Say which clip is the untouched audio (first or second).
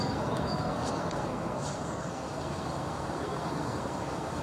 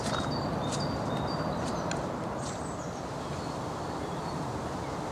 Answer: second